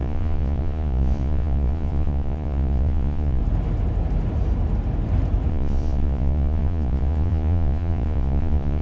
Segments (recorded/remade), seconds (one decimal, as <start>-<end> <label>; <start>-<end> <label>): 0.0-3.4 remade; 3.4-5.5 recorded; 5.5-8.8 remade